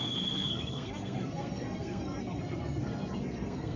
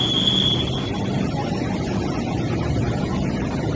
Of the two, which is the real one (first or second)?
second